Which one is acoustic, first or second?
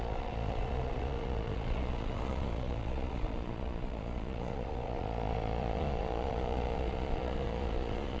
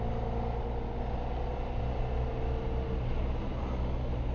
second